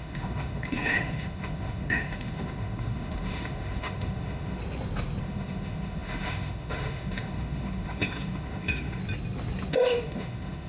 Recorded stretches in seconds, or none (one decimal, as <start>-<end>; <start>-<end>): 4.6-5.2; 9.0-9.7